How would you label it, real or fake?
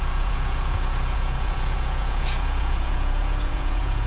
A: fake